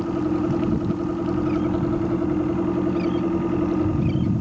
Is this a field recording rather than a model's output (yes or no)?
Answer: yes